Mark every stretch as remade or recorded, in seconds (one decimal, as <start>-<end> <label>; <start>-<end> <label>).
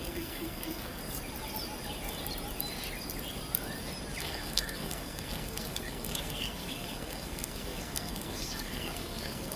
0.0-1.0 remade; 1.0-4.2 recorded; 4.2-9.6 remade